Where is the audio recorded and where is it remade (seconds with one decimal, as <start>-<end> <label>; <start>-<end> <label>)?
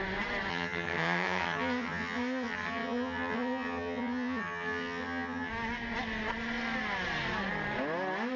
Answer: 0.0-0.5 recorded; 0.5-5.5 remade; 5.5-8.4 recorded